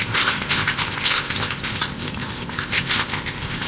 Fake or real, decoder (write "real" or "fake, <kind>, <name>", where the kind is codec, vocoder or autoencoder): fake, codec, ZipCodec